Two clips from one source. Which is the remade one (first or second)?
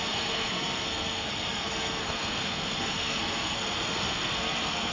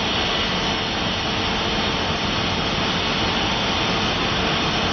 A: first